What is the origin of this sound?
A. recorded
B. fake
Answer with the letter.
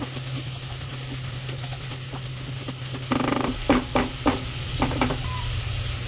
A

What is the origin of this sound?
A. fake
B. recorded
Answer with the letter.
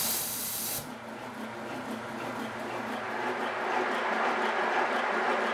B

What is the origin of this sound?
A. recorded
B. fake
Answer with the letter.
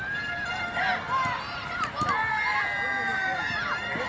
A